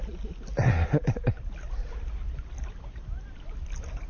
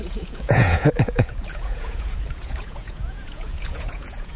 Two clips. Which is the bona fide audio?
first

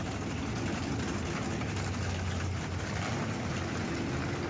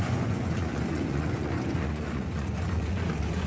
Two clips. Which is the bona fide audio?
first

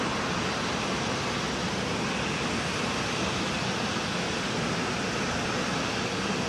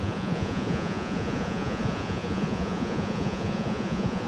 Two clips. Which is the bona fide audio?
first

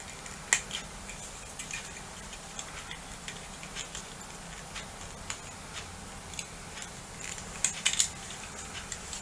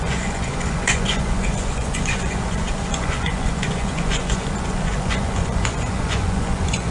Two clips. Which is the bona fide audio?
first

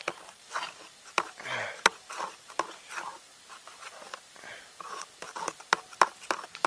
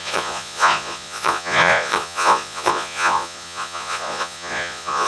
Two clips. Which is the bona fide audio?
first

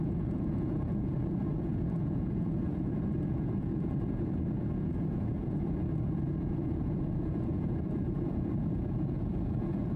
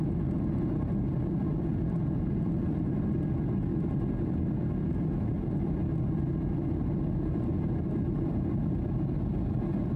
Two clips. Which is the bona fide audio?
second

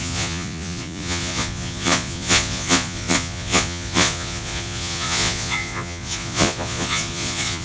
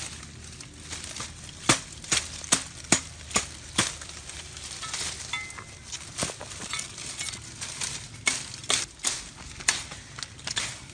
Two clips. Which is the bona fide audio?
second